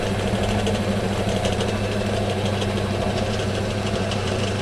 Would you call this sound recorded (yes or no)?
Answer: no